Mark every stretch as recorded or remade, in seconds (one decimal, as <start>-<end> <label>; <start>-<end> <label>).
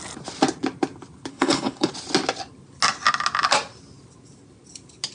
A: 0.0-1.3 recorded; 1.3-1.9 remade; 1.9-5.1 recorded